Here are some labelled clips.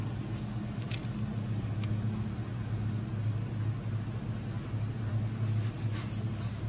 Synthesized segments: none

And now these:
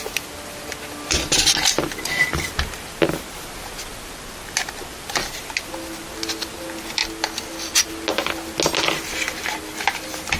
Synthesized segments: none

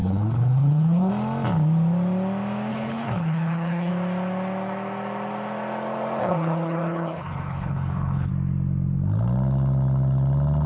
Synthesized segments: 0.0-1.1 (codec, HILCodec); 2.7-3.9; 6.2-8.3

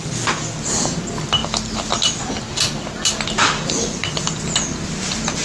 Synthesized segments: none